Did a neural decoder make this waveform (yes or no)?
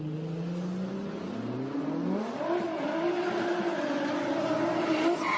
no